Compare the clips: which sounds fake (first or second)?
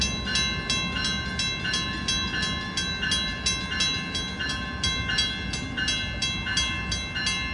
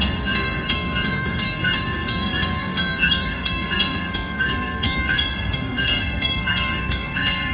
second